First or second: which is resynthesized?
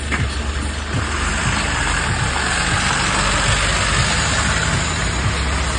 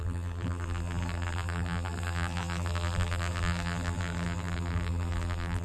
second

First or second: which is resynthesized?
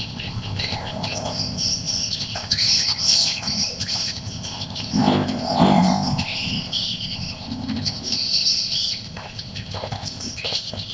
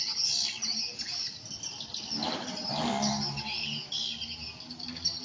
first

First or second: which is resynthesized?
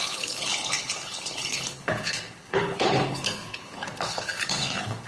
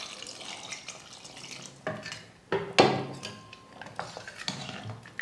first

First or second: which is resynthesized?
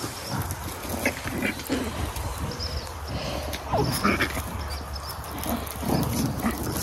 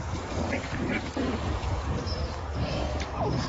second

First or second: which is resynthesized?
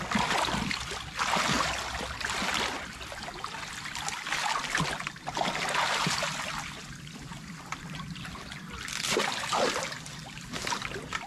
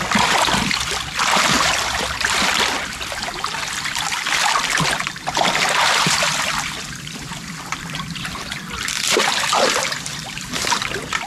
second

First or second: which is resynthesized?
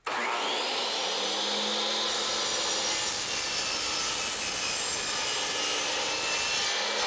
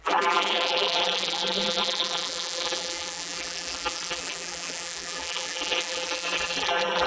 second